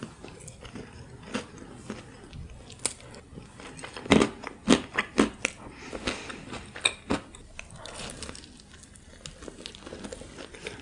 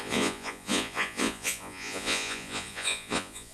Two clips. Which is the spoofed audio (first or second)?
second